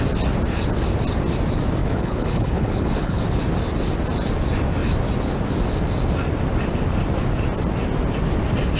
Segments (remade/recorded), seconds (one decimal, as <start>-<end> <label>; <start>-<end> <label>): 0.0-1.8 recorded; 1.8-3.2 remade; 3.2-8.8 recorded